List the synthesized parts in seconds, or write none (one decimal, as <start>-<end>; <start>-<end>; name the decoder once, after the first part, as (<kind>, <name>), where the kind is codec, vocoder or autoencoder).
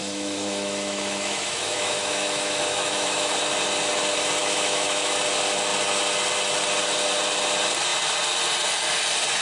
0.0-3.3 (autoencoder, DAC-VAE); 4.4-5.2